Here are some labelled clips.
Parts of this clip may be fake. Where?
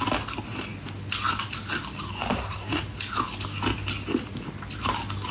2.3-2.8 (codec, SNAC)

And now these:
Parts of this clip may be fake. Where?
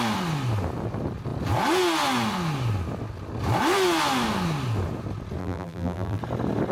5.4-6.2 (vocoder, BigVGAN v2)